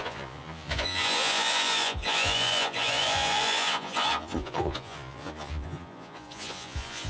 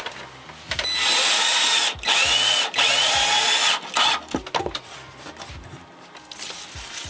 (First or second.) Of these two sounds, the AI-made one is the first